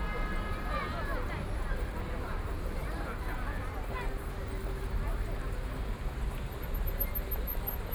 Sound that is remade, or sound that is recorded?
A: recorded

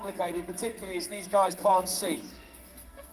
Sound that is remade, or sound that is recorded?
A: remade